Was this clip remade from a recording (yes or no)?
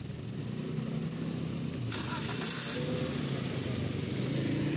no